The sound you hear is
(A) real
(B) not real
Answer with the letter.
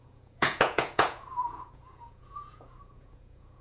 B